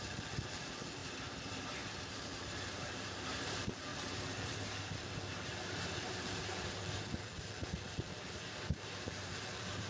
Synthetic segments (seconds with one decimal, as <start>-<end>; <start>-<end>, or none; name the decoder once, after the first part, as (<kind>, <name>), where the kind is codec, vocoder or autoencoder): 0.0-1.0 (vocoder, BigVGAN v2); 2.1-9.9